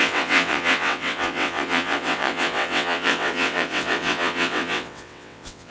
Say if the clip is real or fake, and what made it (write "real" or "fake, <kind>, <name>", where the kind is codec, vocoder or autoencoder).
fake, vocoder, WaveNeXt